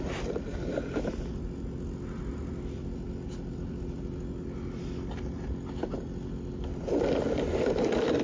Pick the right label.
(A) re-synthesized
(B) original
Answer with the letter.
B